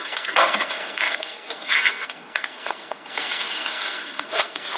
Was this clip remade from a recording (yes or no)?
yes